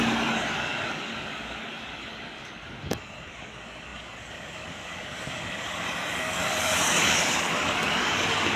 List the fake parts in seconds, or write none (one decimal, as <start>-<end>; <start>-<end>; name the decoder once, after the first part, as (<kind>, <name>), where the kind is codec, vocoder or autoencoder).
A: 0.0-8.6 (codec, DAC)